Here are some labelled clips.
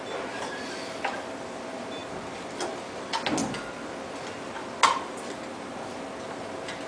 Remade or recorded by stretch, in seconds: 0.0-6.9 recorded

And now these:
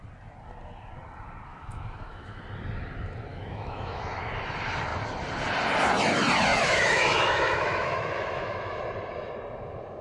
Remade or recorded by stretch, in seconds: 0.0-1.5 recorded; 1.5-2.4 remade; 2.4-3.3 recorded; 3.3-4.3 remade; 4.3-6.5 recorded; 6.5-8.8 remade; 8.8-10.0 recorded

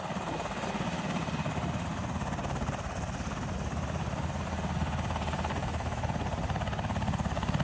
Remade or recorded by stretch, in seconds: 0.0-5.6 recorded; 5.6-6.1 remade; 6.1-7.6 recorded